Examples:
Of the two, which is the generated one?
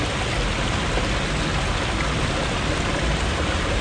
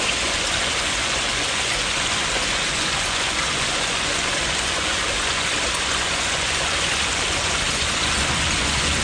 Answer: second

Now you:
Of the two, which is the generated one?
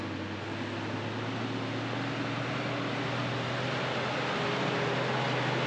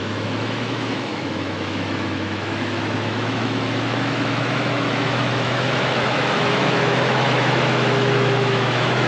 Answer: second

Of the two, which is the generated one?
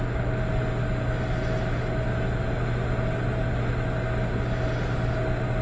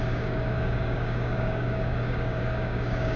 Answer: second